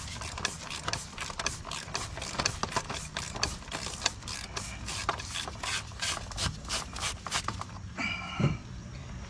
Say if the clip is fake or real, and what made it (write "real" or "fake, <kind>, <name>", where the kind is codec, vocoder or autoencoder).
fake, vocoder, BigVGAN v2